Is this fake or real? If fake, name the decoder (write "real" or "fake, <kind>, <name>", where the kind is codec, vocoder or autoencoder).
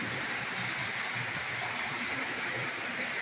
real